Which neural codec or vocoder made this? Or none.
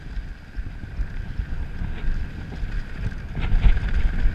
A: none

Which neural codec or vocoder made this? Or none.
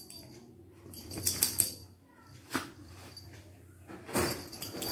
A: vocoder, BigVGAN v2